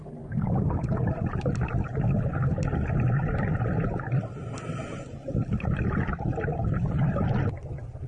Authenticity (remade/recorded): recorded